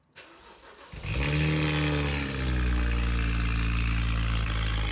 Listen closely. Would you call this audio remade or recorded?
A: recorded